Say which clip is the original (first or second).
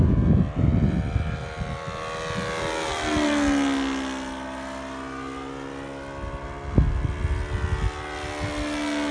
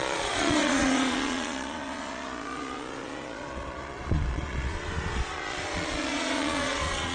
first